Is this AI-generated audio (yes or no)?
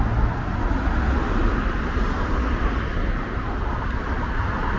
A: no